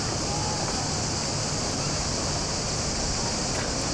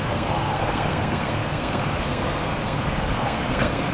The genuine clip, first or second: first